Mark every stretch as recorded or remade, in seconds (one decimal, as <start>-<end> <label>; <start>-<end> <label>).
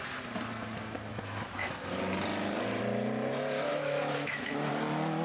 0.0-1.1 recorded; 1.1-1.9 remade; 1.9-3.7 recorded; 3.7-4.7 remade; 4.7-5.2 recorded